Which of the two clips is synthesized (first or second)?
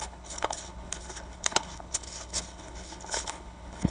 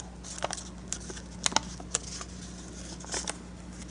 first